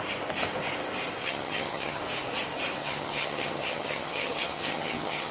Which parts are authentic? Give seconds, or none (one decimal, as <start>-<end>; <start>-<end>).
0.0-1.2; 2.0-2.8